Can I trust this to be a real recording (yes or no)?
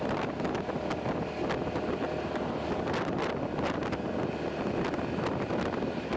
yes